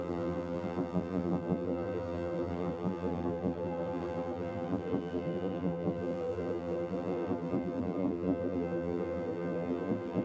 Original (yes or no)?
no